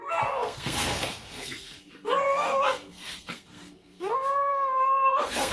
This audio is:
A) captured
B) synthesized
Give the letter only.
B